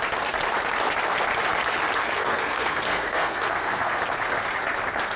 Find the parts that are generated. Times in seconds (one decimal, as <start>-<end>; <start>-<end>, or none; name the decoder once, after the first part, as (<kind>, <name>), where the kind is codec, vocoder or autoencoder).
2.0-4.0 (codec, SNAC)